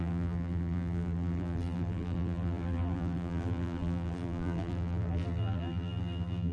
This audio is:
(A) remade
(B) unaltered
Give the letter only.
A